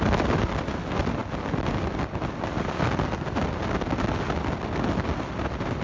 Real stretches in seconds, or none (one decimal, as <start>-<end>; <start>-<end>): 0.0-5.8

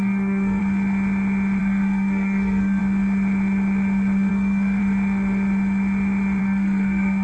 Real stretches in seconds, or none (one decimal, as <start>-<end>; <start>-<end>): 0.6-1.6; 2.8-4.3; 4.8-6.4

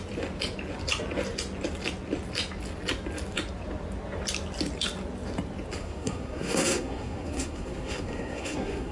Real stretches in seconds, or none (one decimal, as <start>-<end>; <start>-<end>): 0.0-5.8